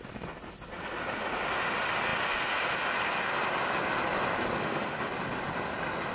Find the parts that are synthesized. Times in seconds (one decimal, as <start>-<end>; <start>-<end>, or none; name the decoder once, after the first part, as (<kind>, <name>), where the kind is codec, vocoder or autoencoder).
4.6-5.1 (autoencoder, DAC-VAE)